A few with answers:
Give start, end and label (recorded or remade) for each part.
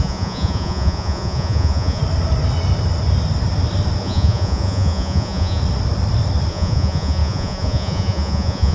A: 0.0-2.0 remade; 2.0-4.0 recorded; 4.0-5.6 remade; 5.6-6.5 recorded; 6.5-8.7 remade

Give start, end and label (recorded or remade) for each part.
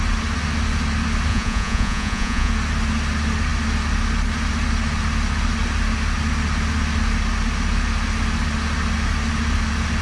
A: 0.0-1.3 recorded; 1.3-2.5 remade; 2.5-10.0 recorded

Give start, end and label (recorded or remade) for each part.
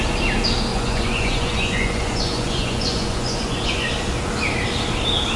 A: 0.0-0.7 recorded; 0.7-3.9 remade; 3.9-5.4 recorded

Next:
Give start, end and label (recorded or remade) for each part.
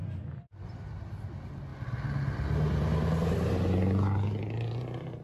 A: 0.0-5.2 recorded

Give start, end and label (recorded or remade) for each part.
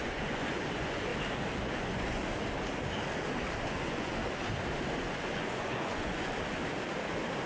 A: 0.0-1.1 remade; 1.1-1.6 recorded; 1.6-2.2 remade; 2.2-3.6 recorded; 3.6-4.2 remade; 4.2-5.0 recorded; 5.0-6.3 remade; 6.3-7.5 recorded